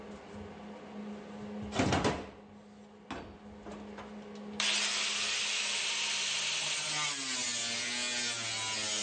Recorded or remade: recorded